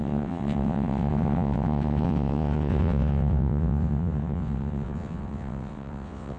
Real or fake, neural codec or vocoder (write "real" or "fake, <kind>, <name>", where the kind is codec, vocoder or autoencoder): fake, vocoder, WaveNeXt